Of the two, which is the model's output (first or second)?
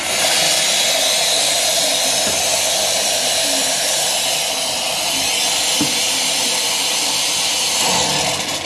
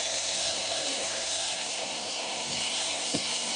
second